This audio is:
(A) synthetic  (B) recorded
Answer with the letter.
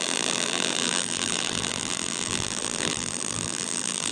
A